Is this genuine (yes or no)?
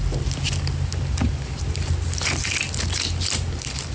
yes